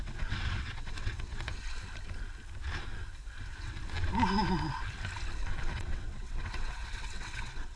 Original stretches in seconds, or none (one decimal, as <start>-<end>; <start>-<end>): 1.5-3.4; 3.8-5.6